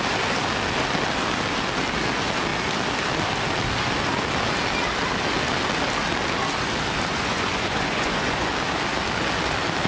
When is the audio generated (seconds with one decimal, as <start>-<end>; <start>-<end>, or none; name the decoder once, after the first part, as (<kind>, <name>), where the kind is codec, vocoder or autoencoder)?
7.1-8.5 (vocoder, Vocos)